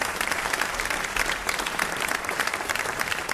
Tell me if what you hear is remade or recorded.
remade